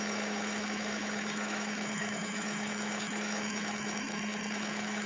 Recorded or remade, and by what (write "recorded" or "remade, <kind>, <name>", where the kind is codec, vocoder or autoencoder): remade, autoencoder, DAC-VAE